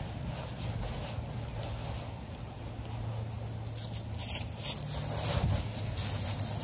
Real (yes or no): yes